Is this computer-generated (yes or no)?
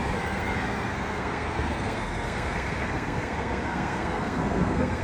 yes